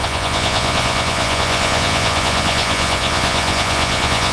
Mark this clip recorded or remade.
remade